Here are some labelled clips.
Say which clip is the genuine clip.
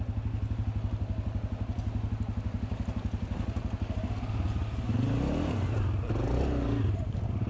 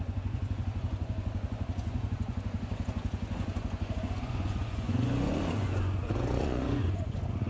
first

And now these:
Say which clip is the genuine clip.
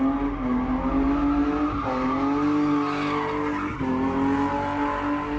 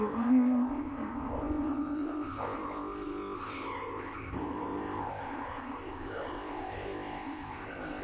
first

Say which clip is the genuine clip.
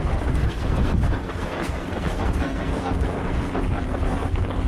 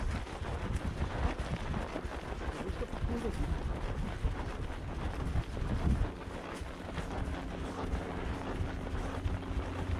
second